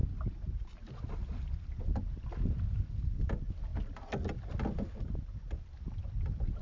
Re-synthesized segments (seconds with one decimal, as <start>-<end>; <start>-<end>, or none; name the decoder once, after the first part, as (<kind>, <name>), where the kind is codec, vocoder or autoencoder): none